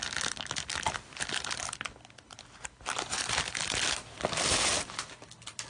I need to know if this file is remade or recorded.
recorded